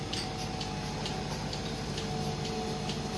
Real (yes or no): yes